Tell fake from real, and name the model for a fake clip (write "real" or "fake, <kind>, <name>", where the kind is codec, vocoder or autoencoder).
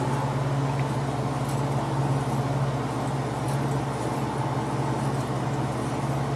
real